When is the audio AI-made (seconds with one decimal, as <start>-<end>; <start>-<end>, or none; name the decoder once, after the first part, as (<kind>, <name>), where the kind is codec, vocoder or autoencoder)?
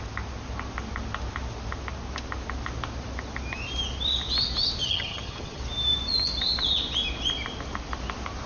4.8-5.6 (vocoder, HiFi-GAN)